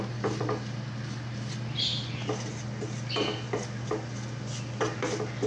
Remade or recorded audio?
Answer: recorded